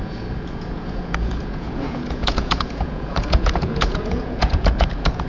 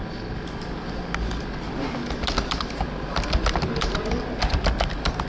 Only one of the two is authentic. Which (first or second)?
second